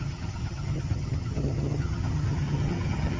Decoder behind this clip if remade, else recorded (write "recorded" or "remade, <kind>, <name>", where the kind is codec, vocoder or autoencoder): remade, vocoder, HiFi-GAN